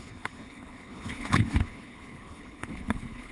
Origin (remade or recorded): remade